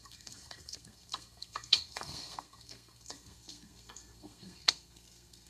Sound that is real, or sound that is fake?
fake